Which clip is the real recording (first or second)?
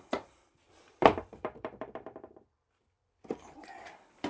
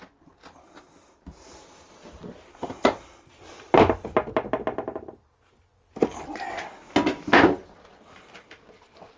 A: second